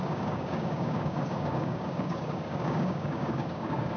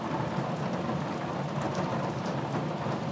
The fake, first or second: first